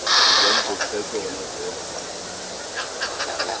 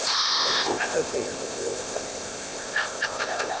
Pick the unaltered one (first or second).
first